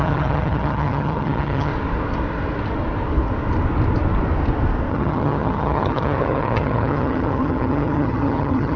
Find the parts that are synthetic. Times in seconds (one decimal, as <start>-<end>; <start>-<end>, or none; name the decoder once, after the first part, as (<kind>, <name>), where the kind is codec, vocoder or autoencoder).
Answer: 0.0-1.7 (vocoder, HiFi-GAN); 4.9-8.8